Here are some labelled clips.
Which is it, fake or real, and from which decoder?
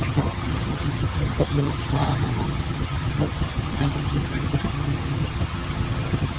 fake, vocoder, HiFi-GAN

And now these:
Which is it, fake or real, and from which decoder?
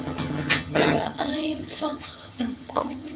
fake, vocoder, HiFi-GAN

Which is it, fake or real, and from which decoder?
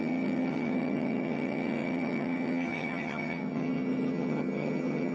fake, vocoder, HiFi-GAN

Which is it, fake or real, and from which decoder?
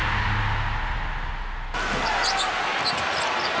real